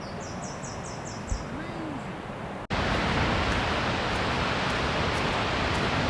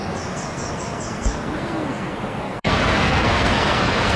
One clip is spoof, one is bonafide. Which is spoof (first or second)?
second